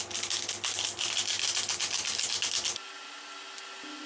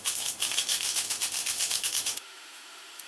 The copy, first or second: second